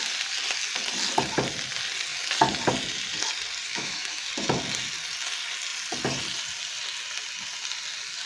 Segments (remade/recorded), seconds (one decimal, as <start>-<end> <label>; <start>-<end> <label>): 0.0-3.7 recorded; 3.7-4.3 remade; 4.3-8.3 recorded